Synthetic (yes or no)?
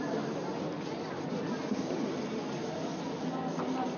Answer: no